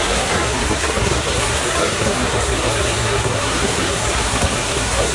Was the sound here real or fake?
fake